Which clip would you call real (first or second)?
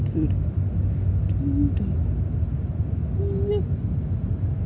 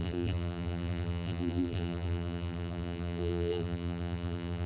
first